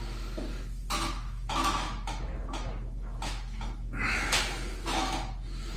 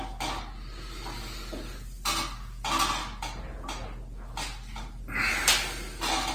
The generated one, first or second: first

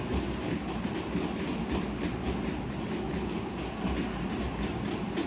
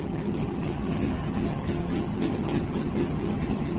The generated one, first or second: second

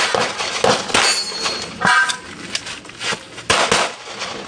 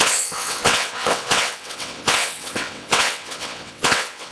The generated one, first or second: second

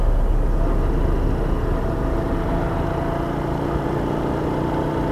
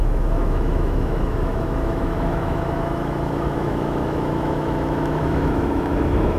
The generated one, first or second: second